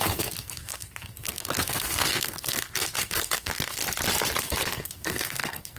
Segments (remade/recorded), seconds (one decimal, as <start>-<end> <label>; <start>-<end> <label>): 0.0-3.8 remade; 3.8-4.4 recorded; 4.4-5.8 remade